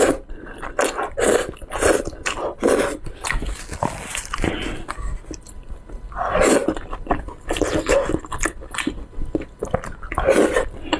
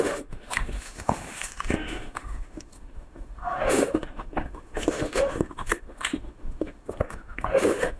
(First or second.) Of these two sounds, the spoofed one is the second